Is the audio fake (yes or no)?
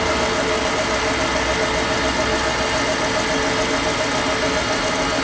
no